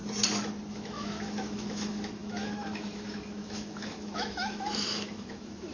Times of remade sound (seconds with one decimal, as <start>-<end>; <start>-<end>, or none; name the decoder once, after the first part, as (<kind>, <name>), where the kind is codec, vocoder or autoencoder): 0.7-5.7 (autoencoder, DAC-VAE)